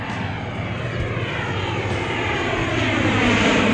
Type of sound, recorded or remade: recorded